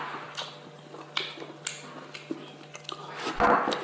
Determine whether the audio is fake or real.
real